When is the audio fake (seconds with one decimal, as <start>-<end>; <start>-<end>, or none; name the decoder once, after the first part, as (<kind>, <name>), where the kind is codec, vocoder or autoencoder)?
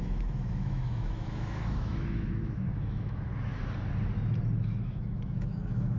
0.0-3.3 (autoencoder, DAC-VAE); 4.8-6.0